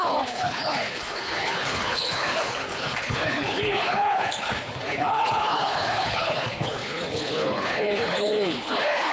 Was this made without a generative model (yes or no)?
no